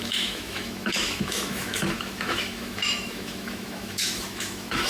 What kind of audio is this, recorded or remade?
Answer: remade